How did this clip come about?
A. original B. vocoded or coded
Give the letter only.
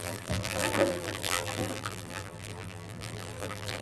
B